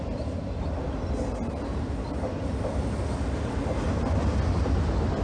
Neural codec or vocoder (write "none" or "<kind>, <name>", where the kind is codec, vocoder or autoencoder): none